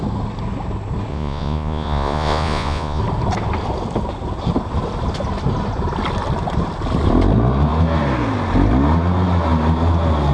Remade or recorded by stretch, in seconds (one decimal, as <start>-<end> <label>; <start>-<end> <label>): 0.0-1.1 recorded; 1.1-3.0 remade; 3.0-10.3 recorded